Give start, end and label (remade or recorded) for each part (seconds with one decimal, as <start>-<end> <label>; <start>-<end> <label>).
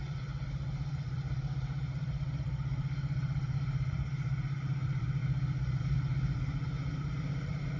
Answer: 0.0-5.2 remade; 5.2-5.8 recorded; 5.8-7.8 remade